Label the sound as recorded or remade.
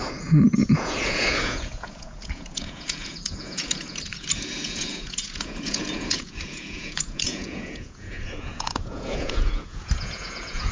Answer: remade